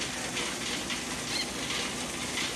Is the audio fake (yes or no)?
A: no